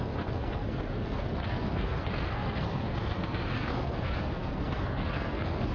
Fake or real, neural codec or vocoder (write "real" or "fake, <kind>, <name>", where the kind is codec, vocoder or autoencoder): fake, codec, SNAC